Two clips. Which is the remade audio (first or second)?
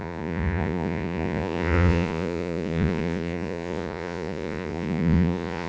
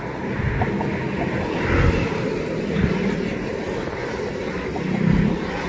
first